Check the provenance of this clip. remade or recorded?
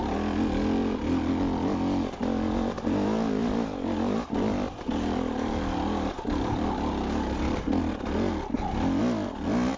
recorded